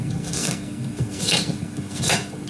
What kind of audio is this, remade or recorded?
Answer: remade